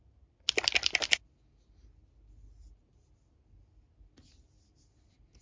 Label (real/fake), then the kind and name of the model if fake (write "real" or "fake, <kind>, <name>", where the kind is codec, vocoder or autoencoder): real